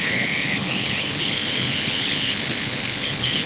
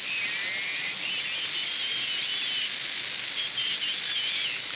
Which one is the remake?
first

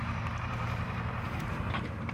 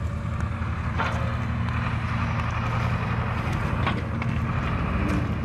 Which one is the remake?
first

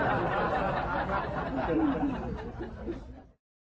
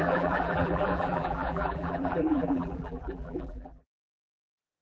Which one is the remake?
second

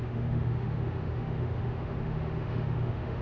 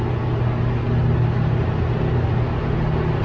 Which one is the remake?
first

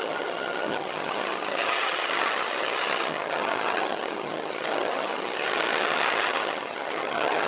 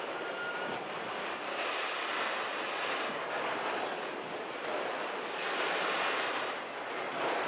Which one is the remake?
first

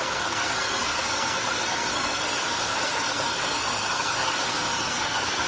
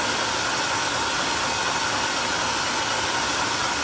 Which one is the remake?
first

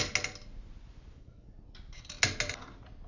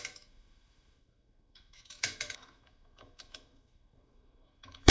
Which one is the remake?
second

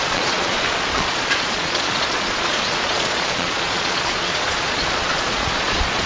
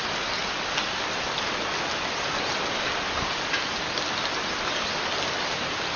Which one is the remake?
first